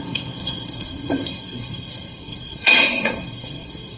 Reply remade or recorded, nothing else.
remade